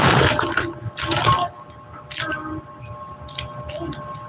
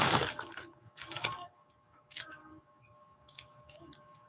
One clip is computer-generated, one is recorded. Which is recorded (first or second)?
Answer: first